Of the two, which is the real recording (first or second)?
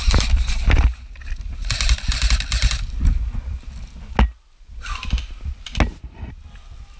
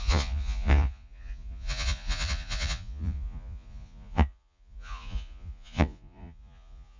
first